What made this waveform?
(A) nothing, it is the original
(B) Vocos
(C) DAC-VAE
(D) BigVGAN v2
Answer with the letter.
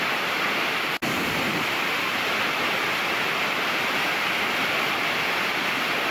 A